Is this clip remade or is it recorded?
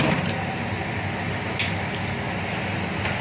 recorded